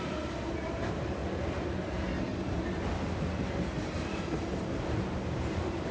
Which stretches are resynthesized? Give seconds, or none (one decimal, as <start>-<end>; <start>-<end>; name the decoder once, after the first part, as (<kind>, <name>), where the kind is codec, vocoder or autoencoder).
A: 0.0-1.2 (vocoder, BigVGAN v2); 3.8-5.9